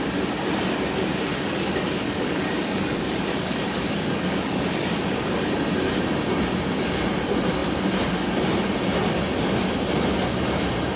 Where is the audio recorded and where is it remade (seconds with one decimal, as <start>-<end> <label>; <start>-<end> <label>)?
0.0-1.3 recorded; 1.3-5.5 remade; 5.5-11.0 recorded